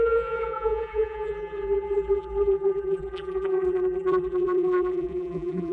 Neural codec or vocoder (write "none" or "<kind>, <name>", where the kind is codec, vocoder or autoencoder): vocoder, BigVGAN v2